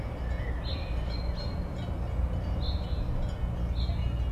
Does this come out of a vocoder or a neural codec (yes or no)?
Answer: no